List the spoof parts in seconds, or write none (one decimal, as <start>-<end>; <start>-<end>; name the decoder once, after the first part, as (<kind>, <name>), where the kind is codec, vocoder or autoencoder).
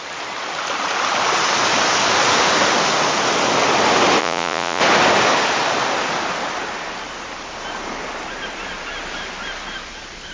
4.2-4.8 (vocoder, Vocos)